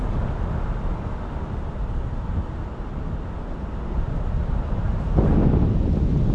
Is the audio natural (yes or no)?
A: yes